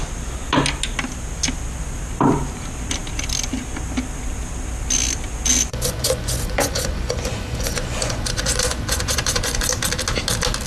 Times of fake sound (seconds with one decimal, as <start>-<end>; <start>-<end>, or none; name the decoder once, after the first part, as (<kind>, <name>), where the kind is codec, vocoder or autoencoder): 5.6-9.7 (vocoder, Vocos)